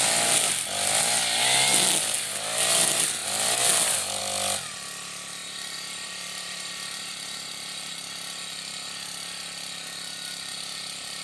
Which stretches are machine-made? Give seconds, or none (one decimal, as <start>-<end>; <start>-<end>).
5.4-7.9; 10.5-11.2